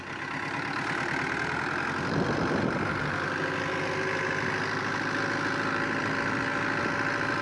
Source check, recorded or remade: recorded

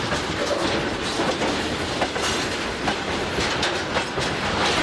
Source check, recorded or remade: recorded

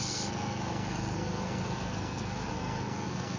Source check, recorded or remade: remade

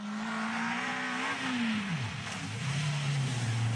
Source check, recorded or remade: recorded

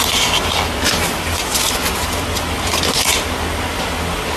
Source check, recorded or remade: recorded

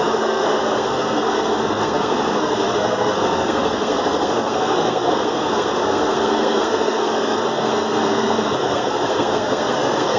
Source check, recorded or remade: remade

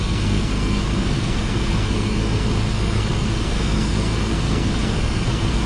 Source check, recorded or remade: remade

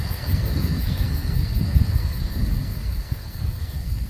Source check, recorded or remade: remade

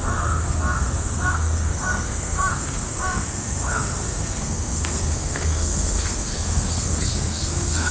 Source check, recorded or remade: remade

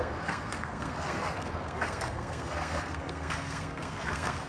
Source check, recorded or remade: remade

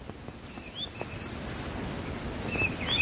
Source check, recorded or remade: recorded